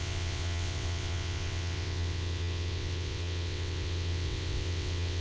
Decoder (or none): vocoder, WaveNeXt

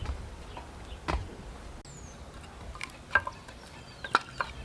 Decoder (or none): none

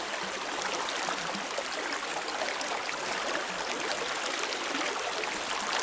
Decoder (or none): none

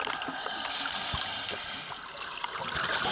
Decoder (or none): none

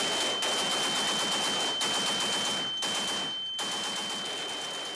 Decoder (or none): none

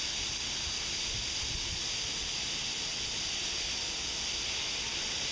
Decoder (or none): none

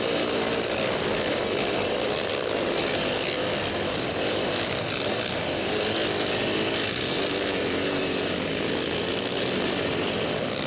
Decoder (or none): none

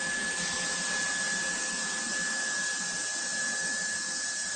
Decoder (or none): none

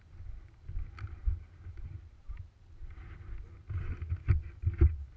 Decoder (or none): none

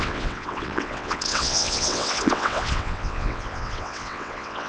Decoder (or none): vocoder, WaveNeXt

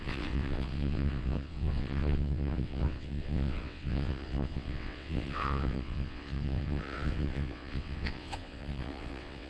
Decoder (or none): vocoder, WaveNeXt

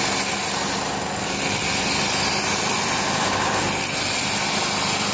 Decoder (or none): none